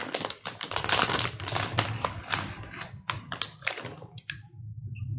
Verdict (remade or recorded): remade